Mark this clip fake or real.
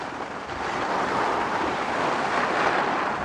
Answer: fake